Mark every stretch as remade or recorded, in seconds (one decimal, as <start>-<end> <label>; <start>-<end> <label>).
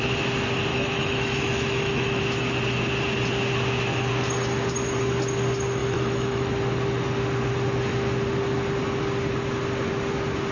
0.0-0.7 recorded; 0.7-2.2 remade; 2.2-5.8 recorded; 5.8-6.5 remade; 6.5-10.5 recorded